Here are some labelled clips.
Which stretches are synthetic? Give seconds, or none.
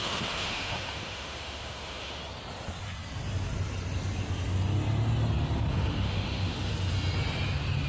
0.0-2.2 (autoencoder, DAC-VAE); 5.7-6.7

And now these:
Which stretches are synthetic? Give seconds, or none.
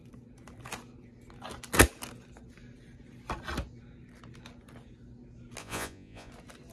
5.6-6.3 (vocoder, Vocos)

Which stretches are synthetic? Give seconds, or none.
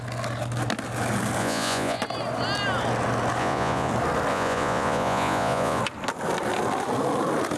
1.4-2.0 (vocoder, Vocos); 3.4-3.9; 4.3-5.8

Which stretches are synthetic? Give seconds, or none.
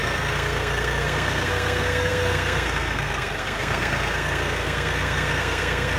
0.0-6.0 (codec, SNAC)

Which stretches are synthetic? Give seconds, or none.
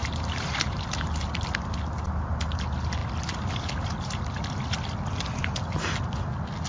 0.0-1.1 (vocoder, BigVGAN v2)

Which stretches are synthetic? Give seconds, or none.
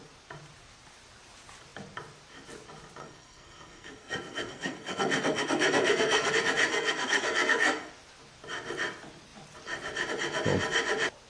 3.0-6.3 (codec, SNAC); 6.7-7.9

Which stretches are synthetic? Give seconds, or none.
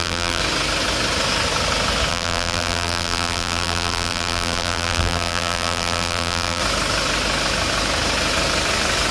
0.0-0.4 (vocoder, BigVGAN v2); 2.1-6.6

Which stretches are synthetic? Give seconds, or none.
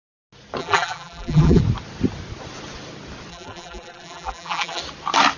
0.6-1.6 (vocoder, BigVGAN v2); 3.3-4.8